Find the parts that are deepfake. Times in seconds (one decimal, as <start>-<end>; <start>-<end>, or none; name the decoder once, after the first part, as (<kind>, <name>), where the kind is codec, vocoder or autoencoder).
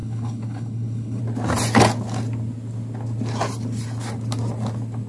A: 0.0-1.2 (codec, HILCodec)